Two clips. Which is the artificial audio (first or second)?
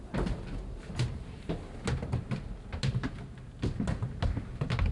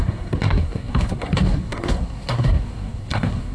second